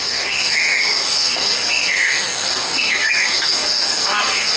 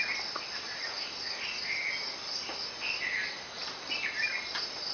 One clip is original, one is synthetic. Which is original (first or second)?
second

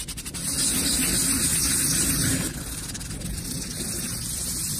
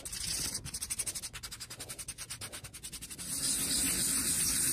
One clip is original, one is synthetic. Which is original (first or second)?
second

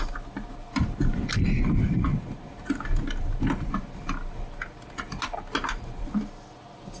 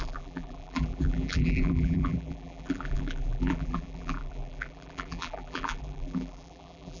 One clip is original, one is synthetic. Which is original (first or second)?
first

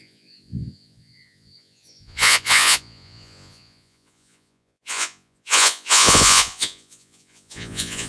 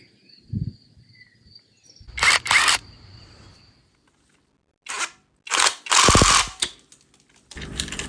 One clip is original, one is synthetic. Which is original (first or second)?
second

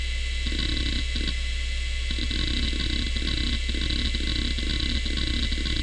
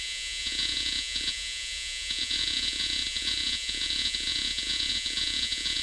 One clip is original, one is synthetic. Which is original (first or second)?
first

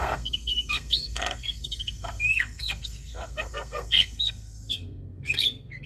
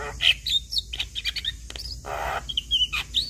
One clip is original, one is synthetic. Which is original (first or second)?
second